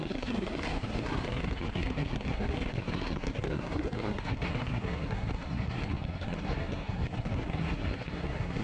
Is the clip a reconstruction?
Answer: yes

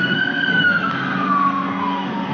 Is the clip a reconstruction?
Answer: yes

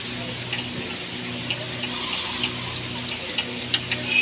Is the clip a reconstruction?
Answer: no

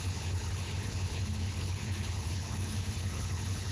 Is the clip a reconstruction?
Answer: yes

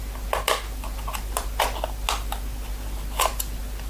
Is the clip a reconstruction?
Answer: no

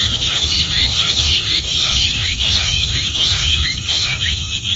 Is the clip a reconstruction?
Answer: yes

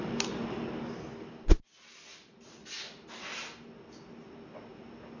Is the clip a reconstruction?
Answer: no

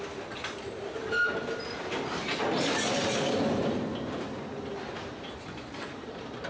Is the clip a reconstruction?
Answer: no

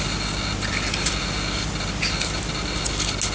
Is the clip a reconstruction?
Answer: no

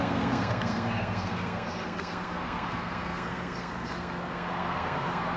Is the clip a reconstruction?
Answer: yes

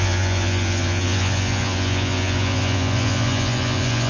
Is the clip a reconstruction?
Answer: yes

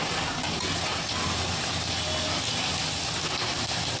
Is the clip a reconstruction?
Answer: no